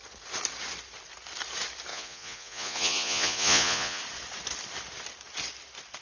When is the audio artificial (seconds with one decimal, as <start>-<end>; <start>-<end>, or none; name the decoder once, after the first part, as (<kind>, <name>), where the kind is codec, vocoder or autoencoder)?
1.9-4.0 (vocoder, Vocos)